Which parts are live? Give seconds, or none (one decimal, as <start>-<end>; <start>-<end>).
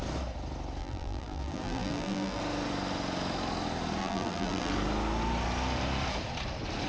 0.0-0.8; 2.4-4.0; 4.7-6.9